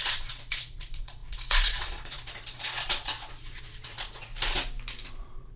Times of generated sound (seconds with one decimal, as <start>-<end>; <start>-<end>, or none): 0.0-4.3; 5.1-5.6